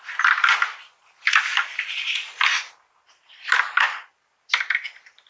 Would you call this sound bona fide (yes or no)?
yes